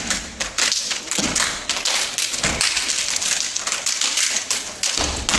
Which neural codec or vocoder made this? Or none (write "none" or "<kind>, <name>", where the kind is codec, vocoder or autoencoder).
none